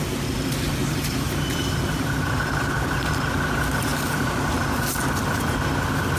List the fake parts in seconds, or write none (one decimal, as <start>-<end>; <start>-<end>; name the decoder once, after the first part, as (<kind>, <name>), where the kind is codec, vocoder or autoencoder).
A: 0.8-3.1 (vocoder, BigVGAN v2)